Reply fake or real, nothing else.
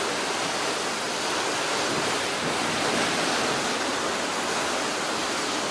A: real